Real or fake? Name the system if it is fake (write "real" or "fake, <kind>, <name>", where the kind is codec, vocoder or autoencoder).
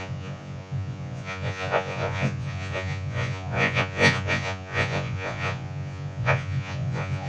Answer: fake, vocoder, Vocos